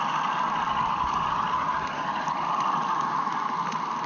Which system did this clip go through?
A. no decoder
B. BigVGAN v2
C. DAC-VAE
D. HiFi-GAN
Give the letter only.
A